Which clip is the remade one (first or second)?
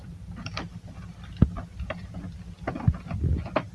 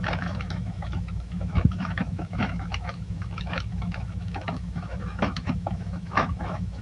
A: second